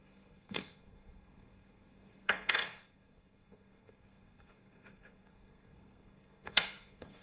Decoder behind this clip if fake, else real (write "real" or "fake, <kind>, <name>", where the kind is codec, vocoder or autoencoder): fake, codec, SNAC